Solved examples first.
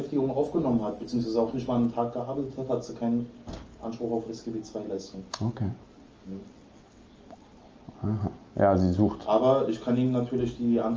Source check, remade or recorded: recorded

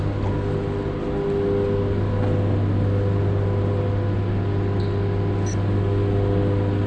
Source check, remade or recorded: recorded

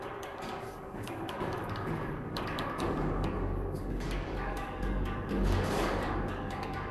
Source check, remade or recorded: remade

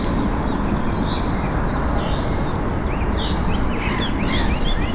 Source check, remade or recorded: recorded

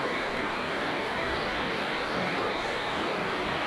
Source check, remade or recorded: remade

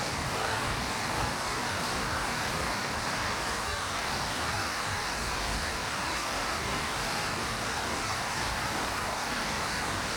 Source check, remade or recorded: remade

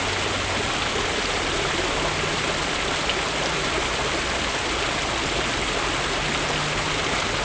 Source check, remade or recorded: recorded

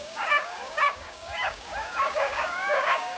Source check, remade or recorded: remade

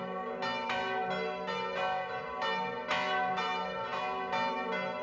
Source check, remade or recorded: recorded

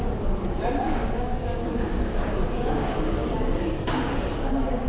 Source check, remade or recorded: remade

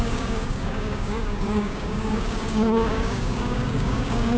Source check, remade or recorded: remade